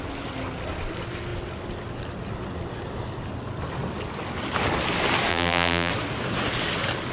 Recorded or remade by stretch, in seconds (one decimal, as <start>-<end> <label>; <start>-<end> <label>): 0.0-5.3 recorded; 5.3-5.9 remade; 5.9-7.1 recorded